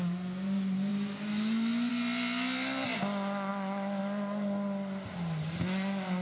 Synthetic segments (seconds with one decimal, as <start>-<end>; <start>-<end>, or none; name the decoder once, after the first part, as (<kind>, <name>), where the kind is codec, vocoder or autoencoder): none